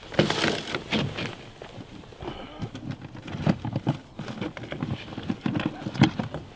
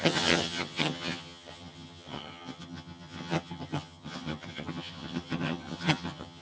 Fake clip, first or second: second